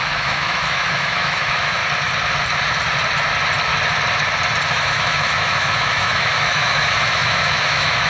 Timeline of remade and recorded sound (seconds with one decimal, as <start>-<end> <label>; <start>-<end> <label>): 0.0-1.8 remade; 1.8-4.7 recorded; 4.7-8.1 remade